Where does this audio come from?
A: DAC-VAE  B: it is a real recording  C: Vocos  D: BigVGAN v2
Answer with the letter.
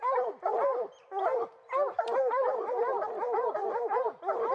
B